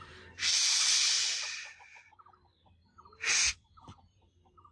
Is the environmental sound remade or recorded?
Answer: remade